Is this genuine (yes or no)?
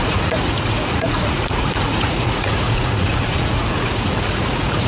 no